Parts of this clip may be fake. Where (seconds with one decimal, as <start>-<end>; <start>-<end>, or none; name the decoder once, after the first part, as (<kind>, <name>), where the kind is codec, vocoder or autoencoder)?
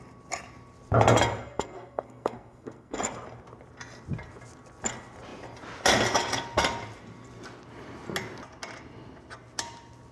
1.4-3.0 (codec, SNAC)